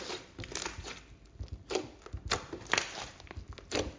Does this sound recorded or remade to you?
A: recorded